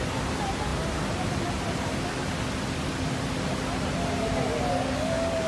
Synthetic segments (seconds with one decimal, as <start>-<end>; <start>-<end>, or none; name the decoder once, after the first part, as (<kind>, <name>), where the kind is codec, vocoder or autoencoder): 4.7-5.5 (codec, DAC)